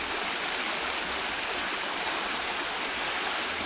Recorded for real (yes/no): yes